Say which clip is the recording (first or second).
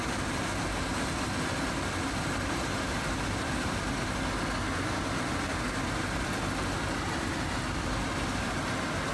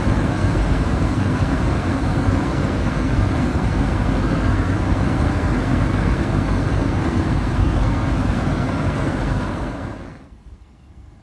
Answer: first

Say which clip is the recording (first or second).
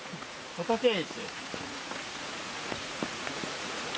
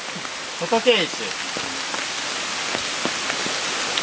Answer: second